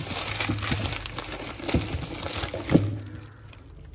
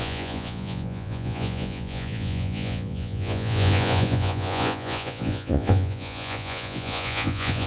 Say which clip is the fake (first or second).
second